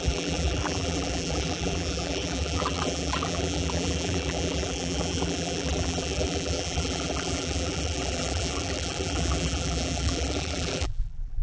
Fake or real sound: fake